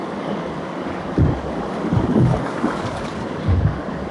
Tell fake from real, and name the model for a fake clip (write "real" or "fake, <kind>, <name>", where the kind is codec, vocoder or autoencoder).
fake, codec, DAC